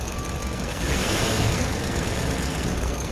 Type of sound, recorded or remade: remade